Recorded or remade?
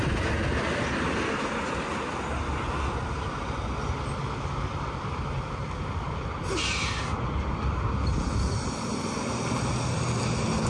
recorded